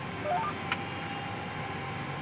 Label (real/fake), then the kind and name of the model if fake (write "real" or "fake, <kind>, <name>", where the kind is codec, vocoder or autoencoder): real